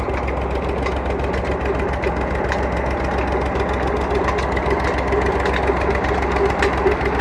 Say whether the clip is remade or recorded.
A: recorded